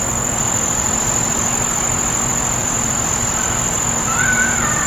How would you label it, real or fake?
fake